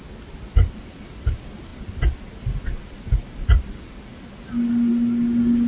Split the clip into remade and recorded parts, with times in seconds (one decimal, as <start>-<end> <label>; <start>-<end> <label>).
0.0-1.0 remade; 1.0-1.7 recorded; 1.7-3.2 remade; 3.2-5.7 recorded

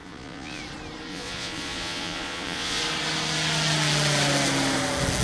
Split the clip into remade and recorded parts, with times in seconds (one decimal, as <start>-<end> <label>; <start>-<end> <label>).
0.0-0.6 remade; 0.6-1.1 recorded; 1.1-2.8 remade; 2.8-5.2 recorded